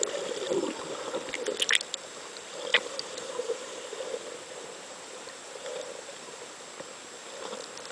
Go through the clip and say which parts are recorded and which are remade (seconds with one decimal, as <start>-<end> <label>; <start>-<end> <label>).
0.0-2.7 recorded; 2.7-6.6 remade; 6.6-7.9 recorded